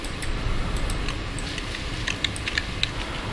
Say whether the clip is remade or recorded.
recorded